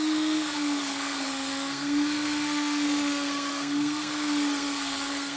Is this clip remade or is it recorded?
remade